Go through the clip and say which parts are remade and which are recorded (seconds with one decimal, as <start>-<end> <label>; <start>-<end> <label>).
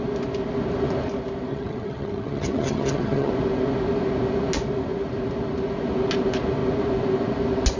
0.0-1.5 recorded; 1.5-3.3 remade; 3.3-7.8 recorded